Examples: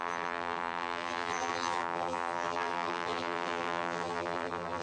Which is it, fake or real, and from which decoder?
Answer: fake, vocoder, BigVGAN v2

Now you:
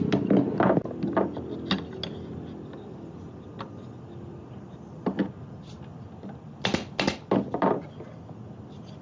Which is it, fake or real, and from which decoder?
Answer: real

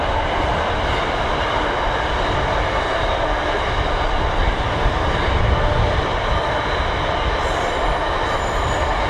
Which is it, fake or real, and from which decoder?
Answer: real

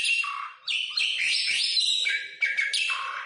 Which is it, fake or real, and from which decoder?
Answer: fake, vocoder, BigVGAN v2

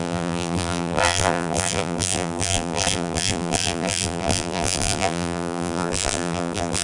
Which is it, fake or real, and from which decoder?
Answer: fake, vocoder, BigVGAN v2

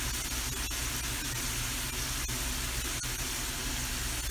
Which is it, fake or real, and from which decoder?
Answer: real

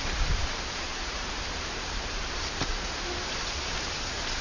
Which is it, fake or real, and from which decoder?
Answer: fake, vocoder, BigVGAN v2